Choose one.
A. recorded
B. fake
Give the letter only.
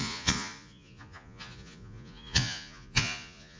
B